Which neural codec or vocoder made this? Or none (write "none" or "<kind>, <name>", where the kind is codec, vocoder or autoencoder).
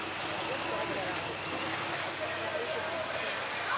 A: none